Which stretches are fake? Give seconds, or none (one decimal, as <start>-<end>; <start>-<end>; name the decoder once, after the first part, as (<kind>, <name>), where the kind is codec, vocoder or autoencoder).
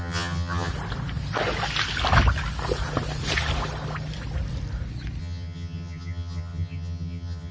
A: 0.0-0.7 (vocoder, HiFi-GAN); 5.2-7.5